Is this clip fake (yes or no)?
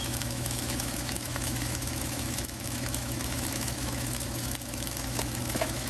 yes